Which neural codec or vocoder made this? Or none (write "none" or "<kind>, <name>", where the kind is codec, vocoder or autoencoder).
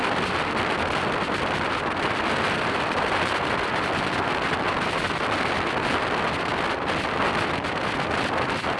vocoder, BigVGAN v2